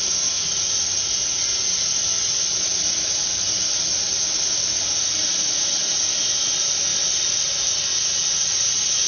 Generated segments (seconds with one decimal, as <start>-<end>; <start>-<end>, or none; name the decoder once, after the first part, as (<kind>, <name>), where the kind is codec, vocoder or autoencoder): none